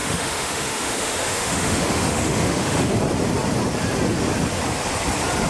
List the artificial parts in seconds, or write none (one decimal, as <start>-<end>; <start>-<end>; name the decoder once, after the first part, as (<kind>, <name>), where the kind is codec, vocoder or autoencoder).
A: 0.0-2.9 (autoencoder, DAC-VAE)